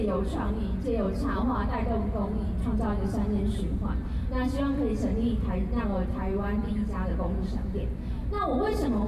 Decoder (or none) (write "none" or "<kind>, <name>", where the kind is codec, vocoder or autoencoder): none